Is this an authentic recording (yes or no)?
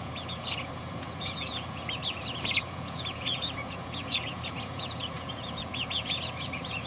no